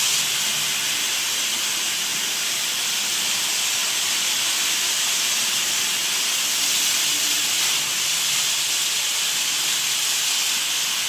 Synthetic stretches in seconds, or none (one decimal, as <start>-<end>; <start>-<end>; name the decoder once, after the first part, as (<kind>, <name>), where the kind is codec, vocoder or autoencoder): none